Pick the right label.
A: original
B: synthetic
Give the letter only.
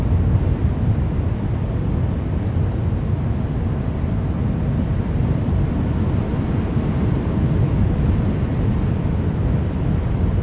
A